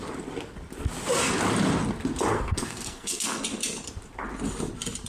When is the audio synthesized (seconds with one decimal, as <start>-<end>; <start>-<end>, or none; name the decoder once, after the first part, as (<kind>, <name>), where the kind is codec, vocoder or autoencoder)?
2.3-3.4 (codec, SNAC)